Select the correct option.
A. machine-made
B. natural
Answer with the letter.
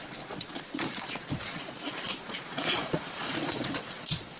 A